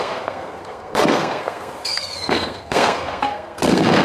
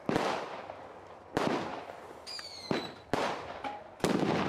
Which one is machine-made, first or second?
first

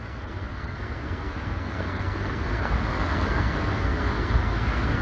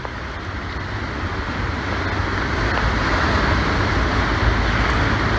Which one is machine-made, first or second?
first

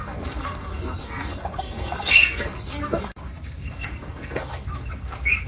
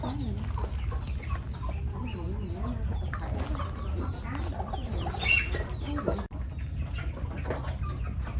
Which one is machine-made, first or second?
first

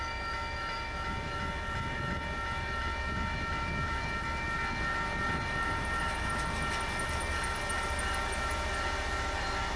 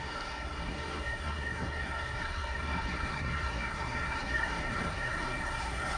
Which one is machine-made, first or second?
second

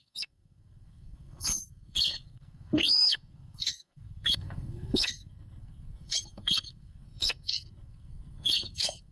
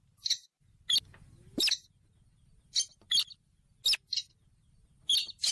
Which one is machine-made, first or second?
first